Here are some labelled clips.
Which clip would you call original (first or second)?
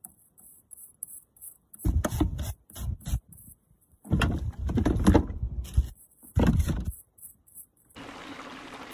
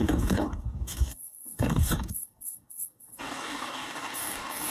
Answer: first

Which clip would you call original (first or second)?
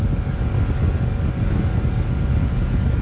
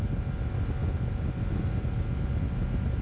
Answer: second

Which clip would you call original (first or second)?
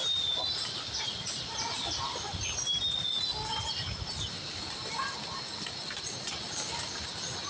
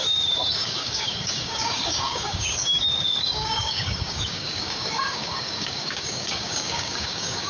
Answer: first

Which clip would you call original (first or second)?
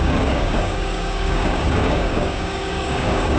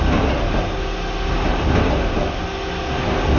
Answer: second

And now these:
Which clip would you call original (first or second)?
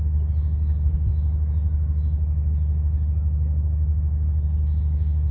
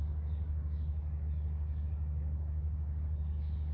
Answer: first